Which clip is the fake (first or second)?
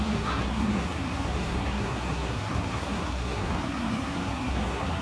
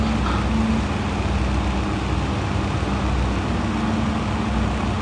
first